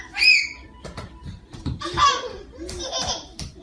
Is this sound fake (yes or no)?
yes